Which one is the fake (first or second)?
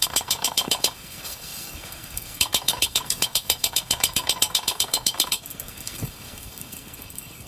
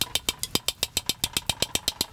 first